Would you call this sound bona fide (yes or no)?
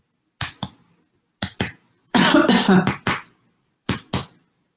yes